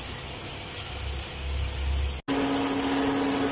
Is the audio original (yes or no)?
yes